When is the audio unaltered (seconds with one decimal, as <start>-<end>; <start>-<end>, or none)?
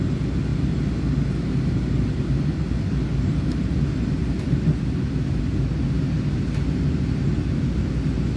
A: 0.0-8.4